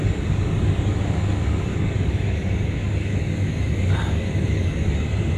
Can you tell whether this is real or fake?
fake